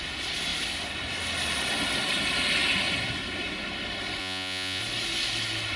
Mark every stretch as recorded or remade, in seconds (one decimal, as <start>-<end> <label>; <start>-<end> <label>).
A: 0.0-4.2 recorded; 4.2-4.8 remade; 4.8-5.8 recorded